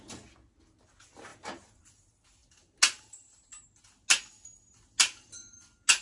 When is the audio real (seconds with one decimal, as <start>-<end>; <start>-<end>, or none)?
0.0-1.3; 1.9-6.0